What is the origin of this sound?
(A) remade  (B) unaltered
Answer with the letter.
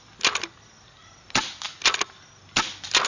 B